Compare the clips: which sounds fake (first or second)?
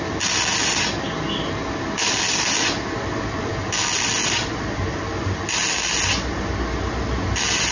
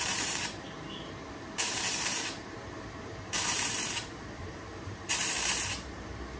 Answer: second